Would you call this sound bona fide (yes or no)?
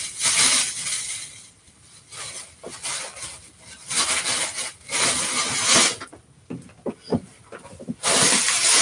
yes